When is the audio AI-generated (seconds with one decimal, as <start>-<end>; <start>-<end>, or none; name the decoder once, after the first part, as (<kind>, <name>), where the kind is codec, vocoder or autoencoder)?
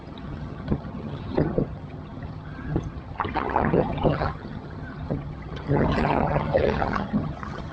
0.0-7.7 (vocoder, HiFi-GAN)